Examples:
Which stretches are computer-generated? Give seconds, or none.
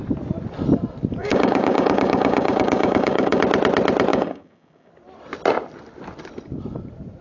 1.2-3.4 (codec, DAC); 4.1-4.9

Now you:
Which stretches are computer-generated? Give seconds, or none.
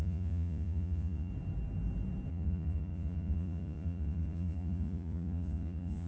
0.0-1.3 (vocoder, Vocos); 2.3-6.1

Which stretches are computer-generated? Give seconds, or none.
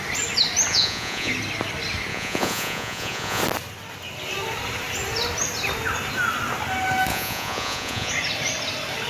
0.7-1.3 (vocoder, Vocos); 2.1-3.4; 7.1-8.1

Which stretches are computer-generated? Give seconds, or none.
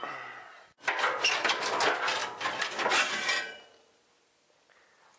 none